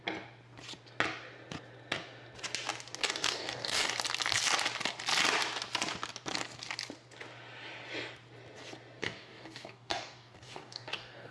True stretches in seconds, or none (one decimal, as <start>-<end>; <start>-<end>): 0.0-3.0; 3.9-9.0